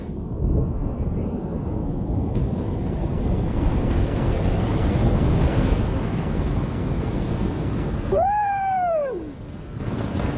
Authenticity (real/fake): fake